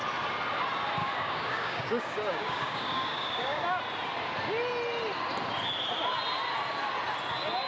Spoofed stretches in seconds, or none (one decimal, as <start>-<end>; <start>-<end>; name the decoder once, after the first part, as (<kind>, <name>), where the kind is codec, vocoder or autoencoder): 1.0-3.8 (codec, DAC)

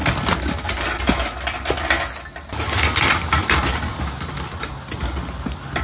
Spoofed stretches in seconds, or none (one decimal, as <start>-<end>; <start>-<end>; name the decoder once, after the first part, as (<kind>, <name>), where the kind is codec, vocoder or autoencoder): none

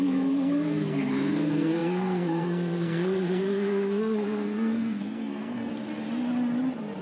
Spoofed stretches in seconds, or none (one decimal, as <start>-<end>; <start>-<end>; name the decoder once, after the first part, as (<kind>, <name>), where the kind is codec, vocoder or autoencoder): 0.0-5.7 (codec, SNAC)

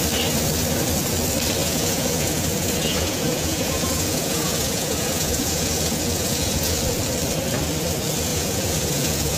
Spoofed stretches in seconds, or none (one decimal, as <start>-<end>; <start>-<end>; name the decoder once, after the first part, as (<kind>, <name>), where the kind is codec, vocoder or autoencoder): 1.6-6.8 (vocoder, Vocos); 8.3-9.4